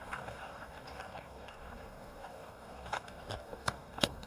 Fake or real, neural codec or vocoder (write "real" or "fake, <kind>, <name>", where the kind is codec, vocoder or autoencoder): fake, codec, DAC